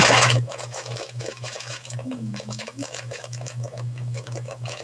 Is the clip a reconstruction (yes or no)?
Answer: yes